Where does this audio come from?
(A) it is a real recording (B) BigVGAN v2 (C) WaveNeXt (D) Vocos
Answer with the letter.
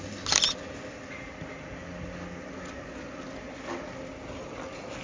A